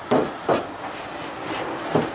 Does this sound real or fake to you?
real